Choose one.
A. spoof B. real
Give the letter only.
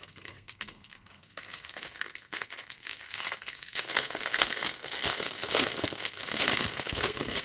A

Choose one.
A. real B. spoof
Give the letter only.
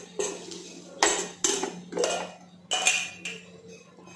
A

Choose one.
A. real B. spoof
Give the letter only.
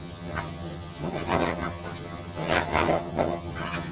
B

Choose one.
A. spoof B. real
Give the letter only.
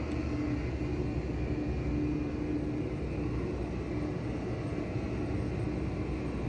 B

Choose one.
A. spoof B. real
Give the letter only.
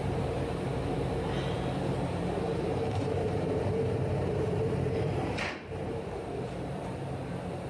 A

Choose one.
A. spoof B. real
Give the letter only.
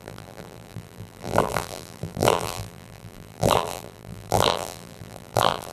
A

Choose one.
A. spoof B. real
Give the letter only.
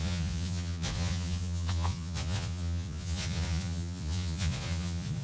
A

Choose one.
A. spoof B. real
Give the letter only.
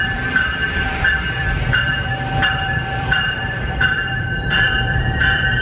A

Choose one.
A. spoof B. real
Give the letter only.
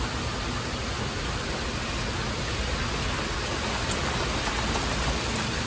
B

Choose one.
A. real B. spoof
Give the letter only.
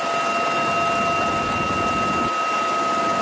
A